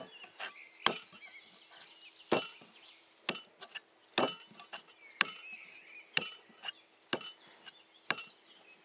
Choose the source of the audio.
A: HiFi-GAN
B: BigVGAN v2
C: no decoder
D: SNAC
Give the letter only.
C